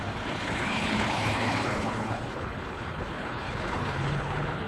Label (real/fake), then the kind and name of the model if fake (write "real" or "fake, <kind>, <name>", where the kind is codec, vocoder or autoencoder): fake, codec, HILCodec